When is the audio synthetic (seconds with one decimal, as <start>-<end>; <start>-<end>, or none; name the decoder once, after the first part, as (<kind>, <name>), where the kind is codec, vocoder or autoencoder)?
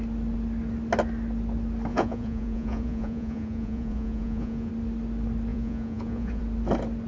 1.9-4.7 (vocoder, Vocos); 5.5-6.4